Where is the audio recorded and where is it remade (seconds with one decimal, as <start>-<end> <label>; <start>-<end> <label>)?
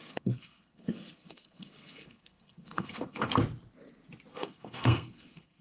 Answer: 0.0-3.4 remade; 3.4-4.3 recorded; 4.3-5.6 remade